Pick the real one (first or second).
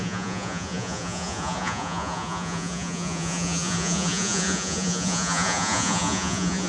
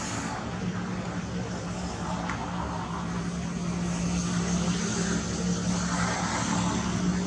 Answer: second